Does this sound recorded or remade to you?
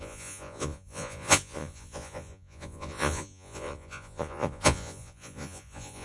remade